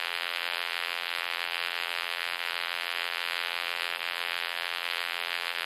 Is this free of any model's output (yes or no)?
no